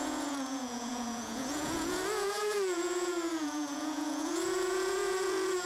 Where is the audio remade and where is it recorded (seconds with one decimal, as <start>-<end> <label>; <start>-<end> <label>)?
0.0-5.7 remade